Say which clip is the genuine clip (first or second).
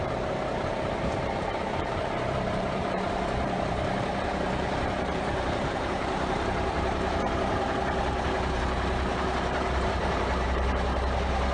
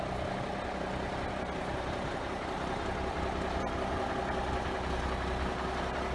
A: second